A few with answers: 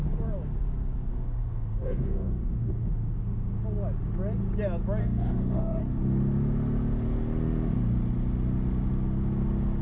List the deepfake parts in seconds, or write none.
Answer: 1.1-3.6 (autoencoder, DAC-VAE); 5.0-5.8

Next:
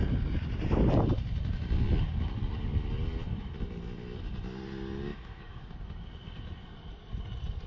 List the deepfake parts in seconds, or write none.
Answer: 5.1-5.7 (autoencoder, DAC-VAE)

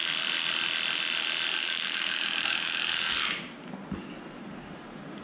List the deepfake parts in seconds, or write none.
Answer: 1.6-3.1 (autoencoder, DAC-VAE)

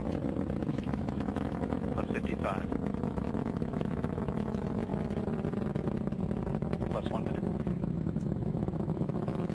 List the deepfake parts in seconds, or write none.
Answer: 0.7-2.4 (autoencoder, DAC-VAE); 3.3-4.9; 7.7-9.5

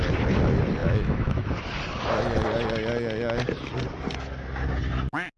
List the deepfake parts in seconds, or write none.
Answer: 0.8-1.5 (autoencoder, DAC-VAE)

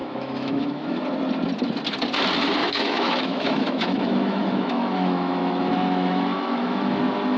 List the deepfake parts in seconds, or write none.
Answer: 0.0-1.0 (autoencoder, DAC-VAE); 2.6-7.0